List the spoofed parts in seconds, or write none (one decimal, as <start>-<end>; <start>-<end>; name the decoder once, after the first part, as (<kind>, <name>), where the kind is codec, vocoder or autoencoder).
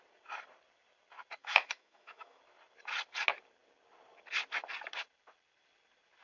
1.4-2.4 (autoencoder, DAC-VAE)